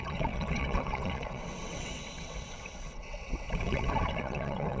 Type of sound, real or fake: fake